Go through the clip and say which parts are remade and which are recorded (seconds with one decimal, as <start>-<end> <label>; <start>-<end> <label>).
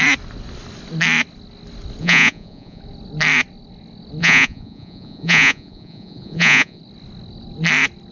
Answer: 0.0-2.0 recorded; 2.0-2.8 remade; 2.8-4.2 recorded; 4.2-6.8 remade; 6.8-8.1 recorded